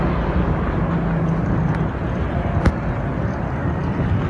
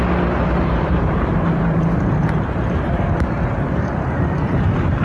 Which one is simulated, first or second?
second